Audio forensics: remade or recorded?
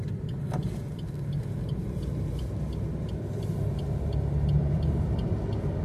recorded